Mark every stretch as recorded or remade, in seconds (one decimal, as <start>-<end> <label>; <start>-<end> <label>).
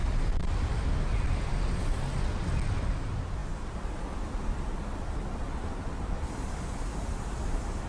0.0-0.6 remade; 0.6-7.9 recorded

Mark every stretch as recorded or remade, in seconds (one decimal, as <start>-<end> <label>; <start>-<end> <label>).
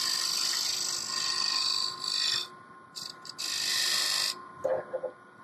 0.0-2.4 recorded; 2.4-3.4 remade; 3.4-5.4 recorded